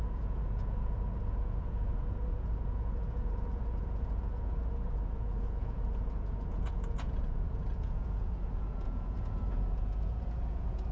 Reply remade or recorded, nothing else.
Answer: remade